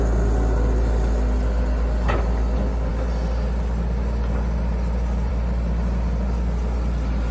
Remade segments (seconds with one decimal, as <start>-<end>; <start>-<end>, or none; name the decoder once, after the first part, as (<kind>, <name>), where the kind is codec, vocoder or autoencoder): none